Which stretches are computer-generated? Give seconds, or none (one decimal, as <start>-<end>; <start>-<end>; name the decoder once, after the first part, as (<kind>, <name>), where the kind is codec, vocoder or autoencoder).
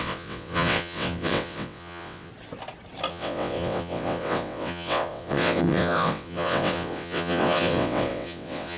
0.0-2.3 (vocoder, WaveNeXt); 3.1-8.8